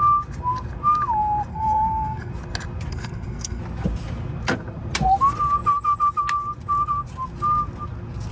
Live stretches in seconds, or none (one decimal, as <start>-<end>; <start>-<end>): 0.0-1.5; 2.3-2.9; 3.6-8.3